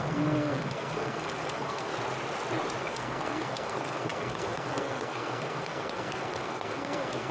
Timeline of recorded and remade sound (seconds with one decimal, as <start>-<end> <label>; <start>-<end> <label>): 0.0-1.9 remade; 1.9-2.8 recorded; 2.8-7.3 remade